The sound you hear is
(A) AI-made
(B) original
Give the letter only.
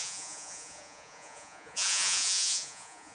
A